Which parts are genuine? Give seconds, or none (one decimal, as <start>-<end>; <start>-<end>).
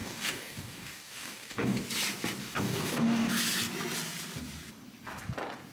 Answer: 1.8-2.4; 3.3-5.7